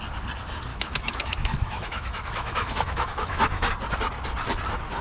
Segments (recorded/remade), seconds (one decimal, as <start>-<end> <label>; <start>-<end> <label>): 0.0-0.7 recorded; 0.7-3.7 remade; 3.7-5.0 recorded